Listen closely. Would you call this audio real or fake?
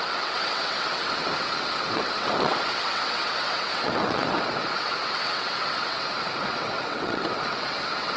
fake